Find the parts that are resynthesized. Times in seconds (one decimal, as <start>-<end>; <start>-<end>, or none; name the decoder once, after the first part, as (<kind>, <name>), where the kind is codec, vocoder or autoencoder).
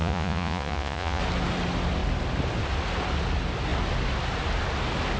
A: 0.0-1.2 (vocoder, Vocos)